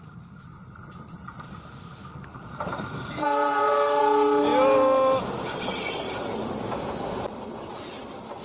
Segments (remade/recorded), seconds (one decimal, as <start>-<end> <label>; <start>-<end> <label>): 0.0-2.3 recorded; 2.3-4.0 remade; 4.0-8.4 recorded